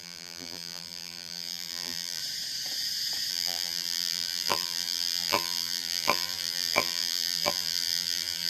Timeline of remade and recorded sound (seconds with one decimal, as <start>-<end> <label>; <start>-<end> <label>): 0.0-2.2 remade; 2.2-3.3 recorded; 3.3-8.5 remade